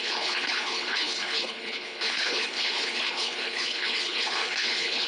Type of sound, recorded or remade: remade